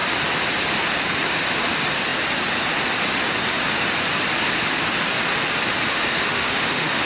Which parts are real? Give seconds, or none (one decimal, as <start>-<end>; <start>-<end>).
0.0-6.1